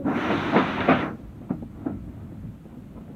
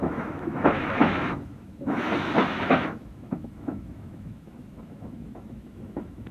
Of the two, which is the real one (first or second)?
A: first